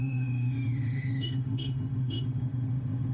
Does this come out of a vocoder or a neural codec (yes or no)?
yes